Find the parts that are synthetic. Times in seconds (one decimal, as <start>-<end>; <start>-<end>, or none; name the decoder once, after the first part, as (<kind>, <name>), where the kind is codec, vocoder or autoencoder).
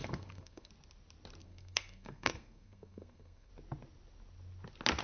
0.0-0.7 (codec, SNAC); 1.4-3.5